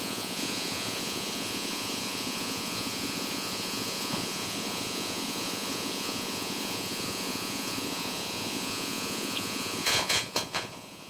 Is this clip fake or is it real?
fake